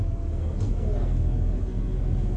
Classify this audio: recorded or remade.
remade